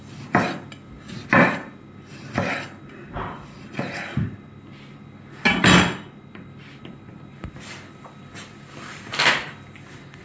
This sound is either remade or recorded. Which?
recorded